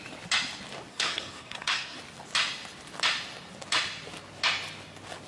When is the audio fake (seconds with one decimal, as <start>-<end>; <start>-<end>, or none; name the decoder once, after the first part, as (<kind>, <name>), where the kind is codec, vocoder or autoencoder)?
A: 0.9-2.0 (codec, SNAC)